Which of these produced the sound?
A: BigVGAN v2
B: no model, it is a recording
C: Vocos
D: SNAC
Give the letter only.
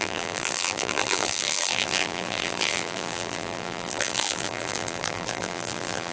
A